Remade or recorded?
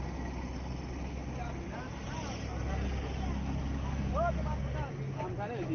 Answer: recorded